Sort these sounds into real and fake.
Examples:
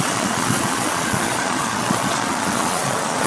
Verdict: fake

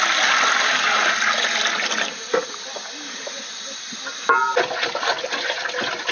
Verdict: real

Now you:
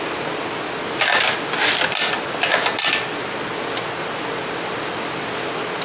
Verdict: real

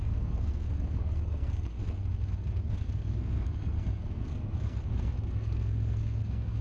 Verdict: fake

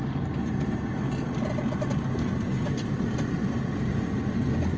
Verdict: real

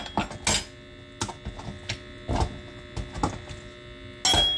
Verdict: real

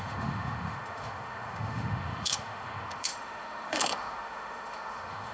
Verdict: fake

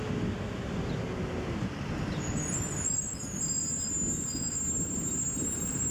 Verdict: real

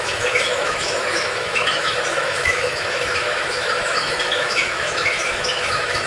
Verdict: fake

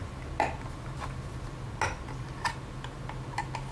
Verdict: real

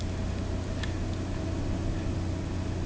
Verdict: real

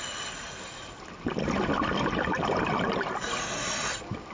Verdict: real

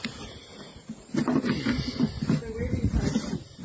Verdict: real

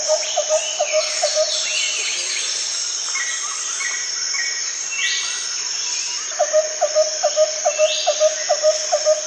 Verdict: real